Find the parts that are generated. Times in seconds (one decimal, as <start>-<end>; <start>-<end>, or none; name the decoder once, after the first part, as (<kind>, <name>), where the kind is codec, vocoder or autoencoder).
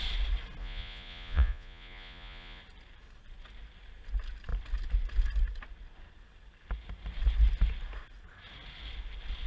0.6-2.6 (vocoder, Vocos)